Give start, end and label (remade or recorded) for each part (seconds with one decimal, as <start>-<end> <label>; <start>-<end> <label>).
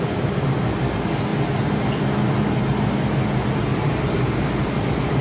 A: 0.0-1.3 recorded; 1.3-1.9 remade; 1.9-3.7 recorded; 3.7-5.2 remade